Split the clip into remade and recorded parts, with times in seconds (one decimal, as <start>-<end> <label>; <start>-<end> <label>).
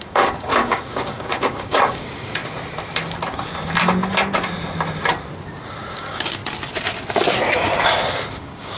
0.0-2.4 remade; 2.4-5.9 recorded; 5.9-6.4 remade; 6.4-8.3 recorded; 8.3-8.8 remade